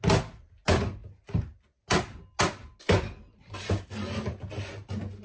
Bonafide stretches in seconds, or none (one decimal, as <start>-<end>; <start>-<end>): 0.0-5.2